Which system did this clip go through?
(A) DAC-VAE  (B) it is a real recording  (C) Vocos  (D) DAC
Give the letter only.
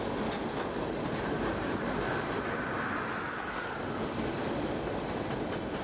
B